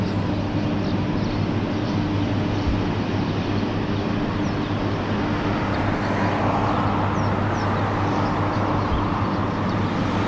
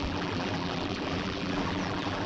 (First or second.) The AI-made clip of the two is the second